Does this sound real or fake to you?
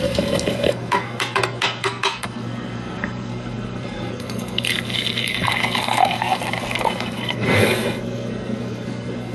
fake